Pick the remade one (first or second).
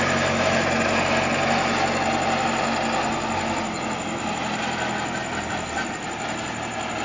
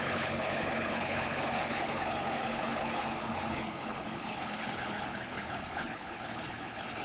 second